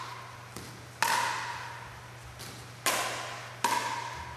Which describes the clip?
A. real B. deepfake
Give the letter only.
A